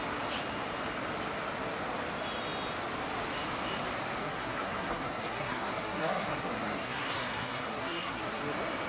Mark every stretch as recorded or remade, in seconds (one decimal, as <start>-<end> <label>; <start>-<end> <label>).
0.0-4.2 recorded; 4.2-8.4 remade; 8.4-8.9 recorded